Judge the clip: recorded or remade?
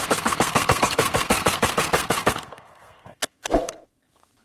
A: remade